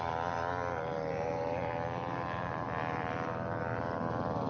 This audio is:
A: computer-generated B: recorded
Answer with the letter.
A